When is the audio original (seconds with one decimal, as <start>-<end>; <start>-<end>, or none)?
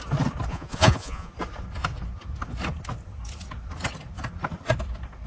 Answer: 0.0-0.5; 1.3-5.3